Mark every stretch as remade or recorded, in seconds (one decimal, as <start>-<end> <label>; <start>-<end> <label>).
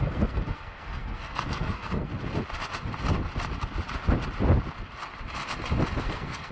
0.0-2.1 remade; 2.1-6.0 recorded; 6.0-6.5 remade